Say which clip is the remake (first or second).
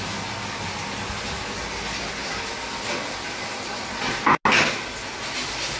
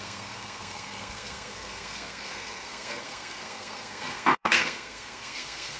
second